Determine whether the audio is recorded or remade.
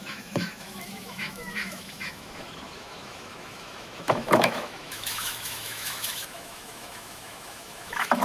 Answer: remade